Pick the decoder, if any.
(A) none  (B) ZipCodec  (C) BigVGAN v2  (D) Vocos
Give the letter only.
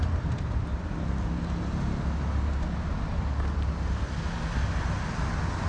A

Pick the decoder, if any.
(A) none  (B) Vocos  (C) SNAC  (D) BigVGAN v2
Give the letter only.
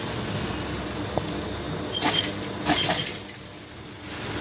A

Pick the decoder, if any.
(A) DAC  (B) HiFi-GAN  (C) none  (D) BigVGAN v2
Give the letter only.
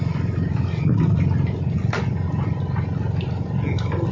C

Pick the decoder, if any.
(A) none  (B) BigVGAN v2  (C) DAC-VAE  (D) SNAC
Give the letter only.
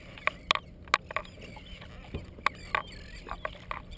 A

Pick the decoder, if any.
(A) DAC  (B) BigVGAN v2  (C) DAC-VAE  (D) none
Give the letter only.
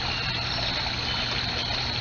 D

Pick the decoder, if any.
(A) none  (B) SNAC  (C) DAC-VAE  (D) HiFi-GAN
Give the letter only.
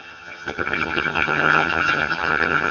D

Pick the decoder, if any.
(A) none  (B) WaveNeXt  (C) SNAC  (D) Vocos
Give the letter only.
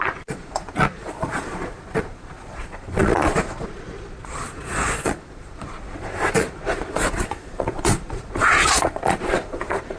D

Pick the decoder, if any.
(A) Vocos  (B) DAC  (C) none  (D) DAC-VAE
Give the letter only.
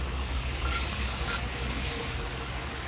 B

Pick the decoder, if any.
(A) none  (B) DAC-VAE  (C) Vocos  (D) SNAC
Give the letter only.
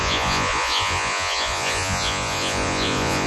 C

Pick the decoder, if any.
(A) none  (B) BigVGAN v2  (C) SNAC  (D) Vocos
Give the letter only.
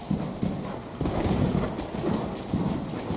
A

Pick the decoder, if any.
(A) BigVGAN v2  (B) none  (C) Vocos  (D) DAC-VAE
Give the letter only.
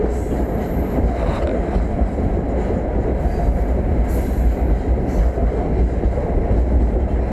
B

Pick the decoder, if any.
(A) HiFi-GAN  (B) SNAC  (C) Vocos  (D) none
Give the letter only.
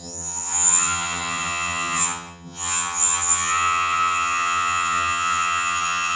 A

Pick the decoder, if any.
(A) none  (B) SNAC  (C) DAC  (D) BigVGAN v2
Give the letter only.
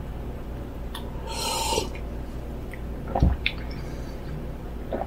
A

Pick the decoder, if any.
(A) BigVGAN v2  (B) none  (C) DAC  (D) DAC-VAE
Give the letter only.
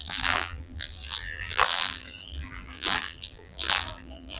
A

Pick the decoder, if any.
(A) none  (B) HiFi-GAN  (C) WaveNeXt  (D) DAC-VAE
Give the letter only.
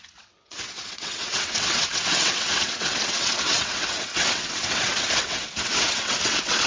C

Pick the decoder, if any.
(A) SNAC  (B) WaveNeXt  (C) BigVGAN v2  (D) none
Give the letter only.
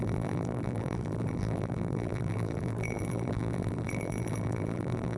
C